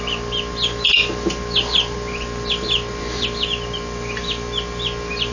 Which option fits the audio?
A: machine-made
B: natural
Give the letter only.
B